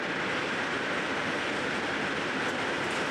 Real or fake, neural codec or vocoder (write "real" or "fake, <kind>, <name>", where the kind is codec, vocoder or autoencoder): real